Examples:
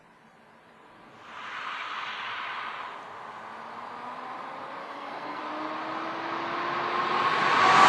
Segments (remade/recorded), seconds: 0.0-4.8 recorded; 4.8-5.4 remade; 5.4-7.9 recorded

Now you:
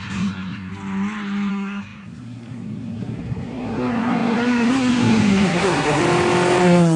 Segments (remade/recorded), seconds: 0.0-0.7 remade; 0.7-1.5 recorded; 1.5-6.0 remade; 6.0-6.6 recorded; 6.6-7.0 remade

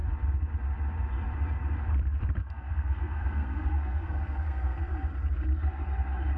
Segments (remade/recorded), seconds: 0.0-2.4 recorded; 2.4-4.8 remade; 4.8-6.4 recorded

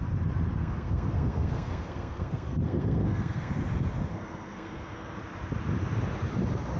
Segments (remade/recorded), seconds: 0.0-0.6 recorded; 0.6-3.5 remade; 3.5-4.1 recorded; 4.1-5.2 remade; 5.2-6.8 recorded